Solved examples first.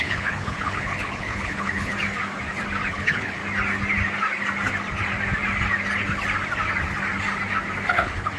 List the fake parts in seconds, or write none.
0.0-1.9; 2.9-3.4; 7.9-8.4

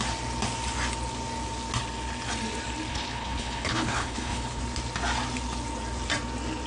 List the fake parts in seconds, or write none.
2.9-4.6

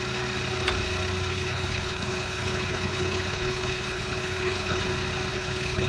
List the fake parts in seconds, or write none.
1.3-4.8; 5.3-5.9

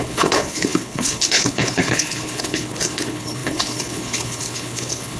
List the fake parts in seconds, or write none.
0.0-5.2